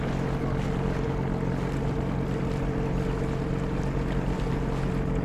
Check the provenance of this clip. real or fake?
real